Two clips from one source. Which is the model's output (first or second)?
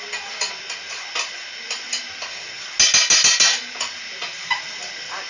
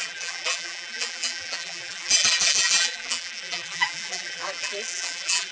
second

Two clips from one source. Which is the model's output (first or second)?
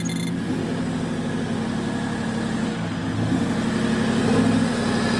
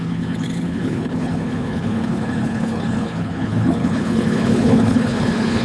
second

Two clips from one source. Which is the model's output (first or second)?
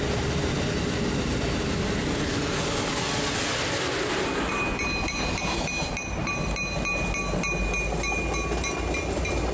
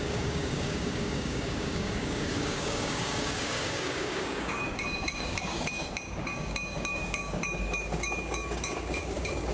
second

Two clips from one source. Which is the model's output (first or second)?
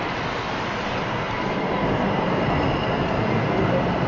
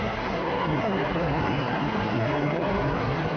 second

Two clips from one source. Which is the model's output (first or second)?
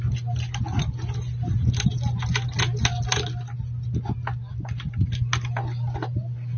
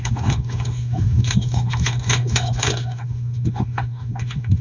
second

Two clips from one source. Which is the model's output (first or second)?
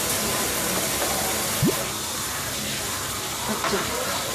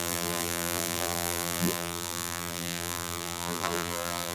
second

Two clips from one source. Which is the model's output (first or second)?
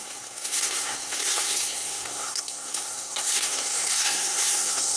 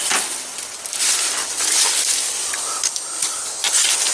first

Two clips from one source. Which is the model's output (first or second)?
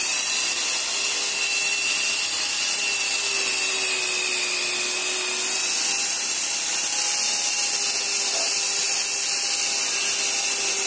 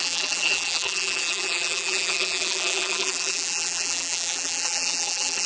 second